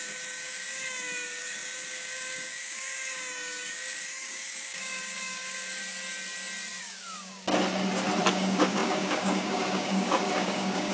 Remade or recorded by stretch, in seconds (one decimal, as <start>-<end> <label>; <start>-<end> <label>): 0.0-5.8 remade; 5.8-6.8 recorded; 6.8-7.5 remade; 7.5-8.3 recorded; 8.3-10.9 remade